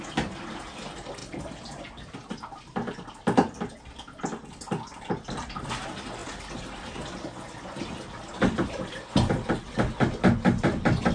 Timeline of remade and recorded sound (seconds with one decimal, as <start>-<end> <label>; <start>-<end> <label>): 0.0-11.1 recorded